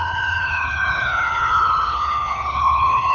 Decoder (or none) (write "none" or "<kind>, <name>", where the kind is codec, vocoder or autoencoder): codec, HILCodec